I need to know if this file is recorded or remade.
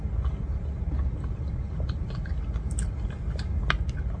recorded